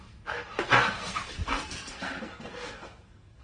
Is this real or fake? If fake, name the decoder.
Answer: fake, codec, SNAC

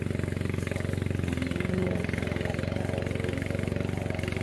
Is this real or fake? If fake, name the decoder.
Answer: real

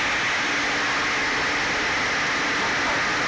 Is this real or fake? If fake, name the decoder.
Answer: real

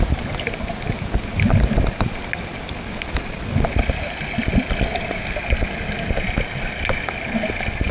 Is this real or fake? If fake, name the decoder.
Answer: real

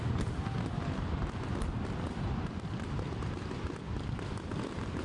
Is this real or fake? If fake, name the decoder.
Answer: real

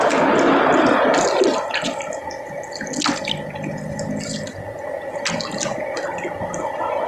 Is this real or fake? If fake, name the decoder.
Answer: real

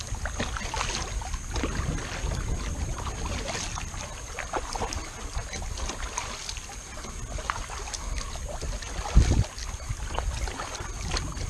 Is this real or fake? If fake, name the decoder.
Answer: real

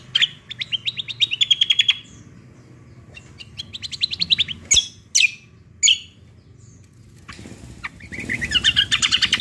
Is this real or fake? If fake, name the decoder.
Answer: real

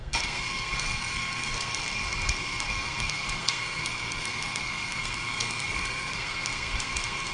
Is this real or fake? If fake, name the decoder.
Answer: fake, codec, SNAC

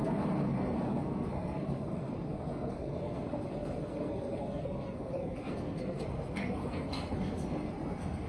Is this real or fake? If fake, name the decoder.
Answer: fake, codec, SNAC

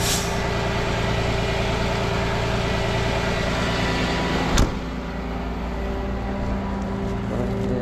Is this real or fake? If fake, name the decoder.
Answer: real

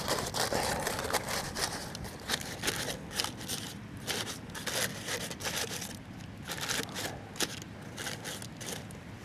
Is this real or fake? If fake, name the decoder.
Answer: real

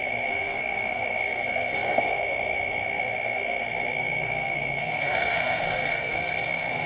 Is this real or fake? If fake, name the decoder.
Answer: fake, codec, SNAC